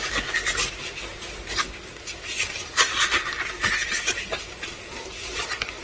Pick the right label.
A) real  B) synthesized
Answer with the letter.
A